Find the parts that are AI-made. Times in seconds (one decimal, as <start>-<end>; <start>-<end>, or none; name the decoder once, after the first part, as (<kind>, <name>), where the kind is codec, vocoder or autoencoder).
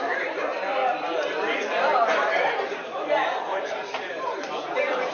0.0-0.5 (vocoder, BigVGAN v2); 2.8-5.1